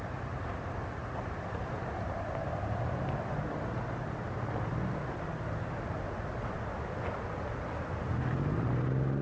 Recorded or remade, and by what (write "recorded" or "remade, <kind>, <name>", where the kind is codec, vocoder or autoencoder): recorded